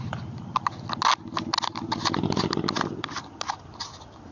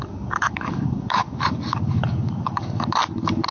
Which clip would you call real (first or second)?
first